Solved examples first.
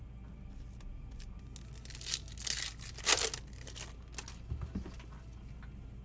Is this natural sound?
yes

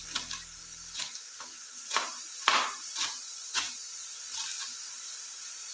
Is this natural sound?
yes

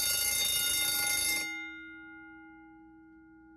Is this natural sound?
yes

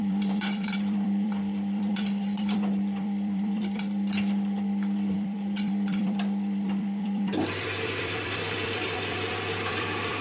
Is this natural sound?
no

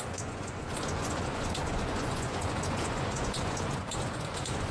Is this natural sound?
no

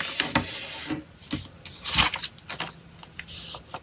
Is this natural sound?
yes